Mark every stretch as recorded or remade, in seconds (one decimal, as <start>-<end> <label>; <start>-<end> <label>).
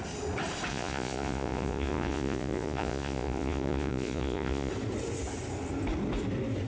0.0-0.7 recorded; 0.7-4.7 remade; 4.7-6.7 recorded